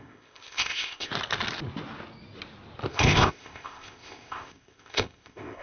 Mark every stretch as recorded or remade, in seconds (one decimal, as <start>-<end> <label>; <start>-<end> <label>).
0.0-1.1 remade; 1.1-2.9 recorded; 2.9-5.6 remade